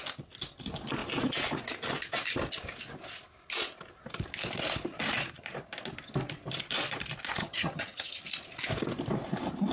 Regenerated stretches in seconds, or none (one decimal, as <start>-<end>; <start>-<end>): 7.4-8.2